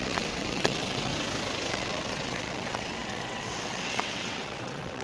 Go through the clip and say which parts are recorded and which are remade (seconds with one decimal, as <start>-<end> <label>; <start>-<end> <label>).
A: 0.0-1.1 remade; 1.1-1.7 recorded; 1.7-5.0 remade